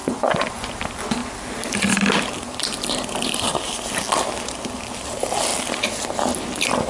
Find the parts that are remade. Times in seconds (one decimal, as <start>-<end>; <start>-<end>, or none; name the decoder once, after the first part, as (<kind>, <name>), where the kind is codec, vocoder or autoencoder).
0.0-0.7 (vocoder, Vocos)